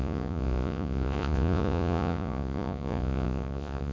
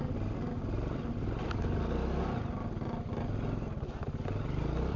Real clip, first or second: second